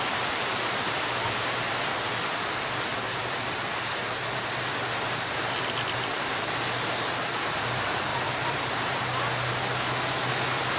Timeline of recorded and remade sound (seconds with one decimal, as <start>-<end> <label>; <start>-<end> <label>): 0.0-2.9 recorded; 2.9-4.0 remade; 4.0-8.1 recorded; 8.1-9.0 remade; 9.0-10.8 recorded